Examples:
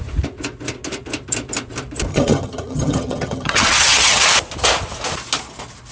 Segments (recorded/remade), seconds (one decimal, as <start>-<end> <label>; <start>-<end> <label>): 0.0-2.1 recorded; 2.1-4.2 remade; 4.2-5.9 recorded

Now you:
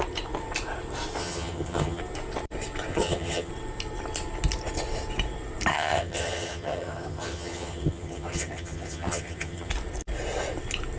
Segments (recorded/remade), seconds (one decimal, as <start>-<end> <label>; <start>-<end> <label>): 0.0-1.2 recorded; 1.2-2.0 remade; 2.0-2.9 recorded; 2.9-3.5 remade; 3.5-5.7 recorded; 5.7-9.7 remade; 9.7-11.0 recorded

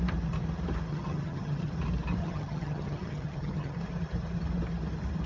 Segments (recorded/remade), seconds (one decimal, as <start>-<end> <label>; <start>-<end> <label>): 0.0-0.9 recorded; 0.9-1.7 remade; 1.7-2.2 recorded; 2.2-3.8 remade; 3.8-5.3 recorded

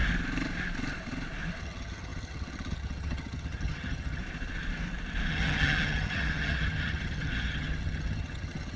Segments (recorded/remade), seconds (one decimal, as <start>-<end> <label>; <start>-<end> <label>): 0.0-1.6 recorded; 1.6-4.2 remade; 4.2-5.3 recorded; 5.3-8.8 remade

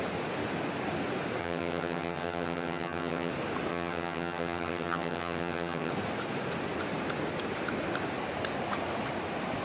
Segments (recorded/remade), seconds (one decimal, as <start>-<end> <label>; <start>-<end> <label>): 0.0-1.4 recorded; 1.4-3.3 remade; 3.3-3.7 recorded; 3.7-5.9 remade; 5.9-9.6 recorded